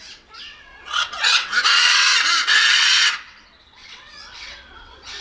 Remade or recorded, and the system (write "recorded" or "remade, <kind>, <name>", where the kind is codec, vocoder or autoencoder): remade, vocoder, WaveNeXt